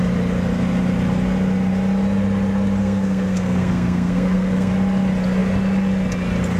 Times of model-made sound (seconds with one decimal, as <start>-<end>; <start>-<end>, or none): 2.8-4.7